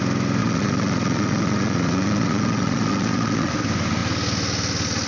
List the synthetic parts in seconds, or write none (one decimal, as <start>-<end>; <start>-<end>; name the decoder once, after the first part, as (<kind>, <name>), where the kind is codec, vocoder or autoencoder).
0.4-3.5 (vocoder, Vocos)